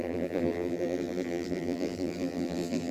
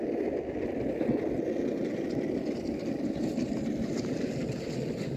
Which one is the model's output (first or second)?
first